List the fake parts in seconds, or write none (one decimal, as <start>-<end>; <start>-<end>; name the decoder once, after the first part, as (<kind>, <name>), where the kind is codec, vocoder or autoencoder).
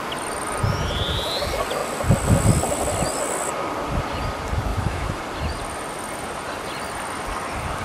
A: 4.7-5.2 (autoencoder, DAC-VAE)